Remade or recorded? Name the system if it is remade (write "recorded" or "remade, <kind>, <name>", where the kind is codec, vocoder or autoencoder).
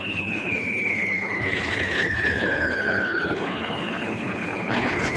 remade, codec, HILCodec